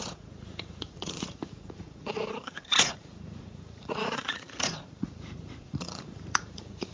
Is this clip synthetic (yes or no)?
yes